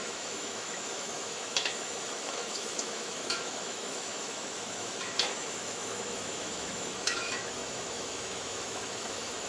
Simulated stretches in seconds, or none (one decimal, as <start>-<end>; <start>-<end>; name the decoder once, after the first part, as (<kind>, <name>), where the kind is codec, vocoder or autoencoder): 0.0-9.5 (autoencoder, DAC-VAE)